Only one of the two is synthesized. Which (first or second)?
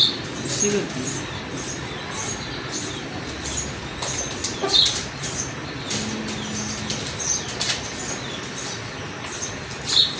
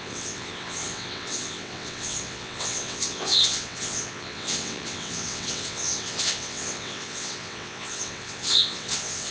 second